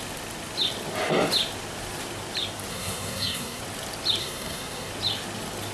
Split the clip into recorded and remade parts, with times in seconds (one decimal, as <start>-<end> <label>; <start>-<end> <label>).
0.0-2.7 recorded; 2.7-3.6 remade; 3.6-4.2 recorded; 4.2-4.9 remade; 4.9-5.7 recorded